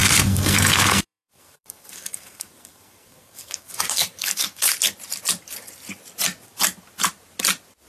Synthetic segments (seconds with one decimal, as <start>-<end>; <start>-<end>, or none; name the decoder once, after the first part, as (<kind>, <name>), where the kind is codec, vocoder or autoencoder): 0.0-4.7 (codec, SNAC)